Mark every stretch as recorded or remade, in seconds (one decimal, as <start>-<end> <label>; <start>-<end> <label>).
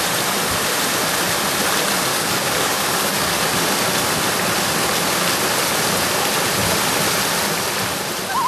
0.0-2.1 recorded; 2.1-3.4 remade; 3.4-8.5 recorded